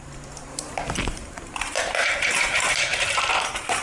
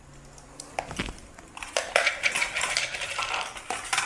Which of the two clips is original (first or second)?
second